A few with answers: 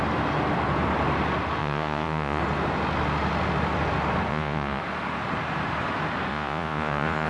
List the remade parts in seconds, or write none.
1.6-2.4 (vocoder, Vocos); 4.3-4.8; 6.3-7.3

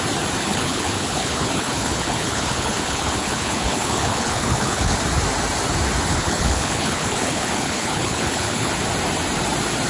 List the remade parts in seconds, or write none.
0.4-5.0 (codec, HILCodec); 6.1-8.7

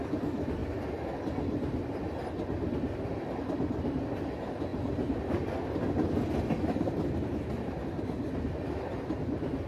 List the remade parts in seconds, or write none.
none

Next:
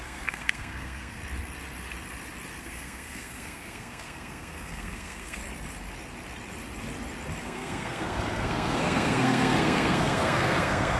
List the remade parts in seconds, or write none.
0.0-1.2 (codec, SNAC); 2.6-5.4; 7.4-11.0